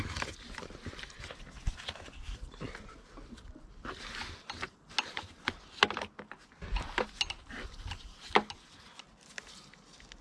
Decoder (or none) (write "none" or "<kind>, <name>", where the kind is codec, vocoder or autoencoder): none